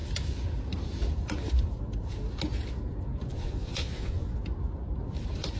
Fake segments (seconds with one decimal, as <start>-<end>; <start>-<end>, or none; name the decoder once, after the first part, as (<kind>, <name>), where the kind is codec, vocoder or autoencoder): 3.3-4.4 (vocoder, Vocos)